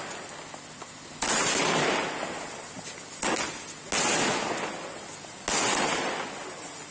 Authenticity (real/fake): real